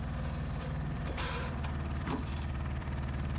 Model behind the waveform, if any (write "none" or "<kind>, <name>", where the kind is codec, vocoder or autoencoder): vocoder, BigVGAN v2